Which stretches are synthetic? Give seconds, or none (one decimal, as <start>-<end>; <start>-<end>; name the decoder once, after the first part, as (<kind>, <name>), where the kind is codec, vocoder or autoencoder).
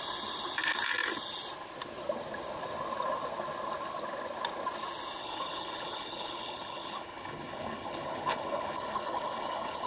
5.2-9.9 (codec, HILCodec)